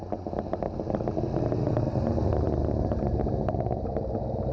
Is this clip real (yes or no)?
yes